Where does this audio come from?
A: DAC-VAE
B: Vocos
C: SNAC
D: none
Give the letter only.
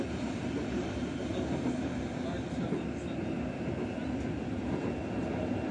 D